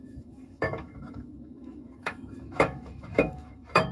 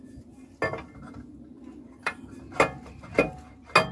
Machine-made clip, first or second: first